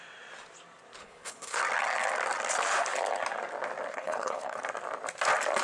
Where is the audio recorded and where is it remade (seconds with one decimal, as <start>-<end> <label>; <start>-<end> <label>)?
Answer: 0.0-1.0 recorded; 1.0-1.6 remade; 1.6-3.9 recorded; 3.9-4.6 remade; 4.6-5.6 recorded